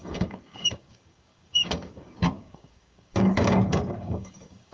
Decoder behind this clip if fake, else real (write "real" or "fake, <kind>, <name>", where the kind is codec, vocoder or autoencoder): fake, codec, DAC